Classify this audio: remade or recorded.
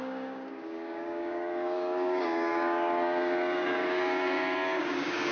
remade